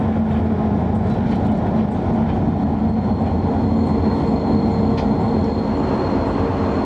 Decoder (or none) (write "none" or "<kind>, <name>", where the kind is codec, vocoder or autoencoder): none